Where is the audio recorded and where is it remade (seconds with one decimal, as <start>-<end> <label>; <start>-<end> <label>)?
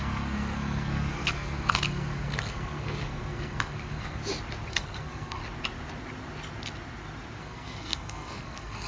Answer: 0.0-4.2 remade; 4.2-4.7 recorded; 4.7-5.4 remade; 5.4-7.4 recorded; 7.4-8.9 remade